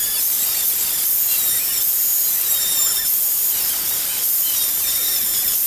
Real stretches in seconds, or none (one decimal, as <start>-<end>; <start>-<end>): none